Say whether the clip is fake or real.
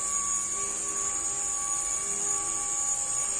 real